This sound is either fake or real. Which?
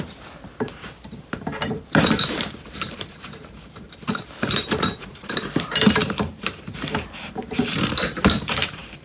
fake